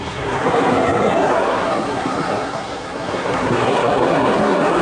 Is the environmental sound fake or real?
fake